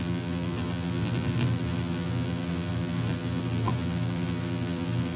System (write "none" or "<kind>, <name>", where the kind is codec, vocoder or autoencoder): vocoder, BigVGAN v2